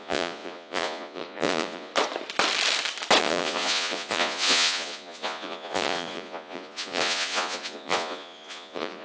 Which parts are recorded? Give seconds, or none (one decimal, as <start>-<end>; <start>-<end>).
1.9-3.2